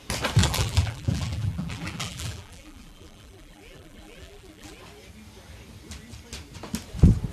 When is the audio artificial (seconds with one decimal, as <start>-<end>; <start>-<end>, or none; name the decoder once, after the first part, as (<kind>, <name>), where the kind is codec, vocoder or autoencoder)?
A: 0.4-4.8 (vocoder, BigVGAN v2)